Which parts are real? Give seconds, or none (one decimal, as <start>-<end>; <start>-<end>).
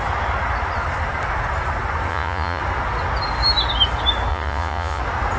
0.0-2.1; 2.6-4.3; 5.0-5.4